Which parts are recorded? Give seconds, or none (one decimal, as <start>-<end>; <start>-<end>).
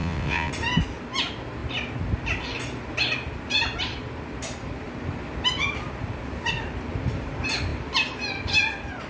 0.5-9.1